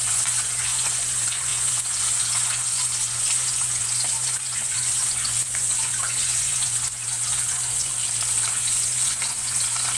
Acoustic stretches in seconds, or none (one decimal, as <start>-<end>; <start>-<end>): 7.9-8.5

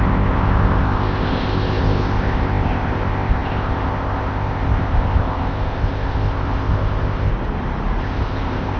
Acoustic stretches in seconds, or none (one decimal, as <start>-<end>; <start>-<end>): 7.3-8.0

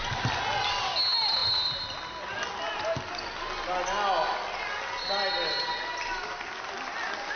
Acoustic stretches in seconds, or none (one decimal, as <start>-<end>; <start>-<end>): 0.0-7.4

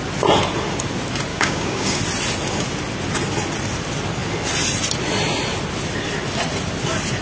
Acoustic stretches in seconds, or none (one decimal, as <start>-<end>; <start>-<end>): 0.0-1.3; 2.0-7.2

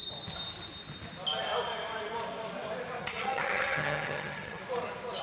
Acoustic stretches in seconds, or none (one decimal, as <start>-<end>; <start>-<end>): 0.0-3.0; 4.6-5.2

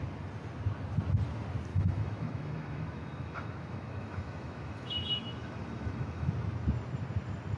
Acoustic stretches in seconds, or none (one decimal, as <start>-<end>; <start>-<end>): 0.0-1.7; 6.3-7.6